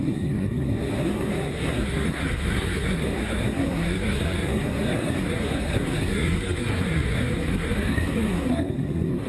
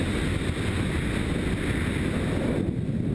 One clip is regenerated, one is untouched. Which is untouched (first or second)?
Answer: second